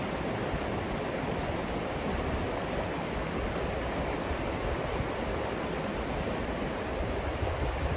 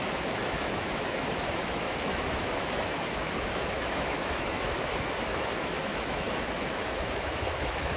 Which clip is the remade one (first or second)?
second